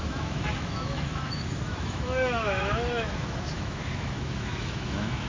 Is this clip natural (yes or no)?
no